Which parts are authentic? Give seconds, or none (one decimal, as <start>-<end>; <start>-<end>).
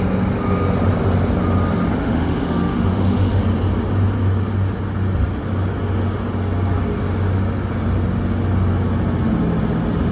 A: 0.0-2.0; 3.4-10.1